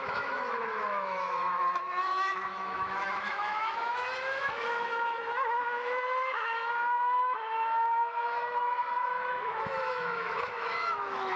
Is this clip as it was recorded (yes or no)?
no